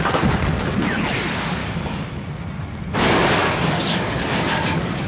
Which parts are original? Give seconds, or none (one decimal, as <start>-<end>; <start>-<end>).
0.0-1.6; 2.1-3.4